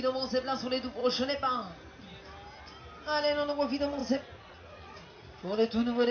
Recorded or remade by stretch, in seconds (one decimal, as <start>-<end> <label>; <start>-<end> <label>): 0.0-4.0 recorded; 4.0-6.1 remade